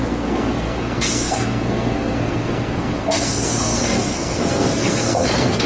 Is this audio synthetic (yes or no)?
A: yes